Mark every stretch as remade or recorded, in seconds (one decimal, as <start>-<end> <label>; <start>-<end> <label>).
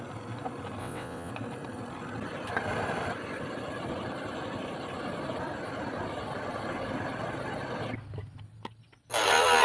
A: 0.0-0.8 recorded; 0.8-1.3 remade; 1.3-9.6 recorded